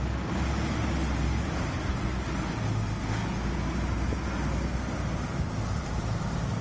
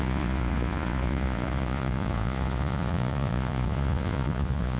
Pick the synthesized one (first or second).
second